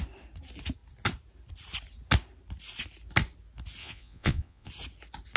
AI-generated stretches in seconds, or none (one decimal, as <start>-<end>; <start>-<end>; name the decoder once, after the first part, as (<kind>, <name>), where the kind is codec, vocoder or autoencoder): 3.8-4.7 (vocoder, Vocos)